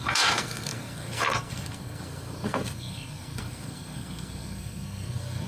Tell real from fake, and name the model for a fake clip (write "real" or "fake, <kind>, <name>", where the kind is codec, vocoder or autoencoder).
fake, codec, SNAC